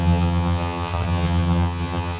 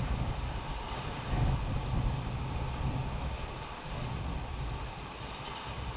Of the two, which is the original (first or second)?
second